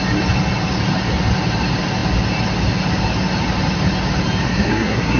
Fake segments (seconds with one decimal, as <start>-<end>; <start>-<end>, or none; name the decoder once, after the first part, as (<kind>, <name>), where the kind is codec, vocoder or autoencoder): 4.4-5.2 (codec, SNAC)